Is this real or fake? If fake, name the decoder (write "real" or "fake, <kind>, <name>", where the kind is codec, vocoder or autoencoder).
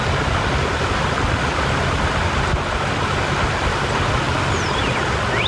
real